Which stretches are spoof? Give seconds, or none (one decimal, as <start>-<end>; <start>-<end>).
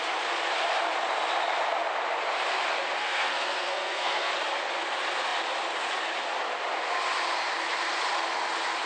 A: 3.0-4.3